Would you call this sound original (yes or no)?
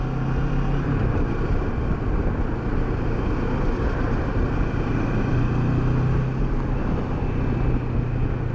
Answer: yes